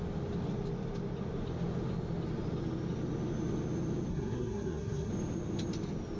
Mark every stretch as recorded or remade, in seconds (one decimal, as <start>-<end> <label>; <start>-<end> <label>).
0.0-4.1 recorded; 4.1-5.1 remade; 5.1-6.2 recorded